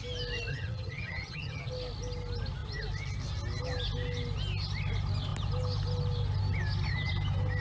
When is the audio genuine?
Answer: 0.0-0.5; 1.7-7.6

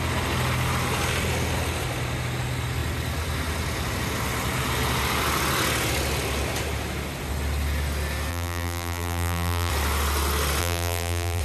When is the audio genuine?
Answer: 0.0-8.3; 9.7-10.6

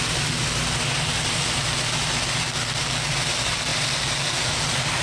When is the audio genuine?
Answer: 0.0-3.7; 4.6-5.0

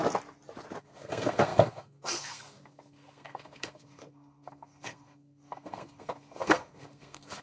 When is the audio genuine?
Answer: 0.0-0.8